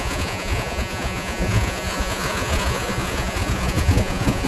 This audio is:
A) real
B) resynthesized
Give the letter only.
B